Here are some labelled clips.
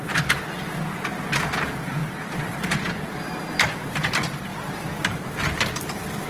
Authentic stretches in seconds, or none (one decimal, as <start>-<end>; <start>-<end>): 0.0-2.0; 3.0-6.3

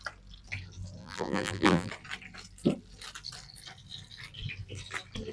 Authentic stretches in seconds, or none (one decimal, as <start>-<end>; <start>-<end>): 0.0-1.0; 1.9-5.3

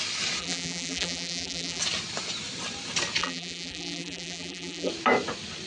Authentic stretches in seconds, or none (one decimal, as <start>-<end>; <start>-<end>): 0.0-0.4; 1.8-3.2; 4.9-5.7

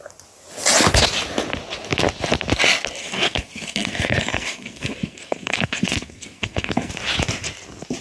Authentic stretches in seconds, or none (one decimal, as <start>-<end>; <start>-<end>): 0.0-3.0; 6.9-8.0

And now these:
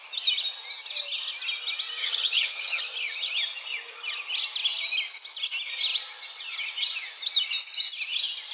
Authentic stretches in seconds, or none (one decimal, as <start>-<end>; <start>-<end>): 0.0-2.0; 2.8-8.5

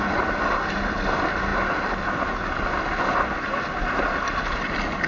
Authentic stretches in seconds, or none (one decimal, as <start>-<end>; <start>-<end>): 0.0-5.1